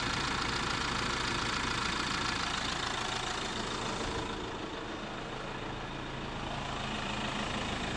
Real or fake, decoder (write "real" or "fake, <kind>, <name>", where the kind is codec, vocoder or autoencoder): real